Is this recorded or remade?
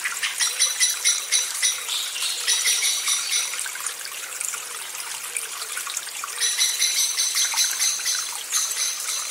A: remade